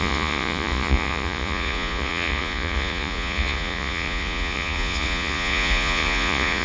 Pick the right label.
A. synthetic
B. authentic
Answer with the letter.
A